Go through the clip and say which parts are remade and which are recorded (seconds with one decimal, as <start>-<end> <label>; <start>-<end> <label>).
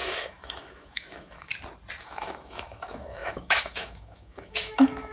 0.0-1.5 remade; 1.5-2.0 recorded; 2.0-5.1 remade